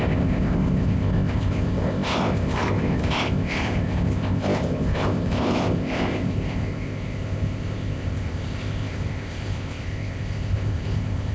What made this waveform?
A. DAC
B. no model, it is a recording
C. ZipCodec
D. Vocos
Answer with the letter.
C